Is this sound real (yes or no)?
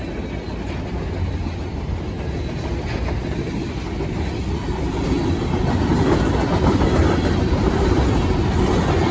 yes